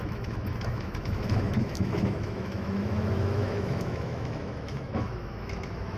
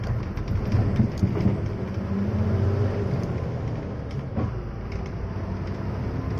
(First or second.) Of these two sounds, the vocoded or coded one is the first